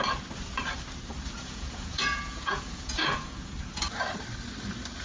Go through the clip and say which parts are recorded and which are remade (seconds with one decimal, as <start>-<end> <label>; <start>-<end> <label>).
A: 0.0-1.4 recorded; 1.4-3.8 remade; 3.8-5.0 recorded